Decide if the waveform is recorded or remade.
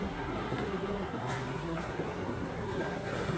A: remade